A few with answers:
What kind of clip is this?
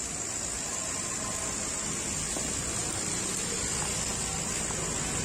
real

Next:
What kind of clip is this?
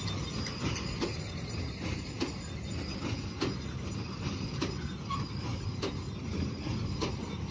real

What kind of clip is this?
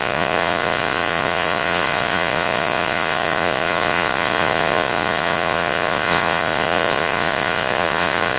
fake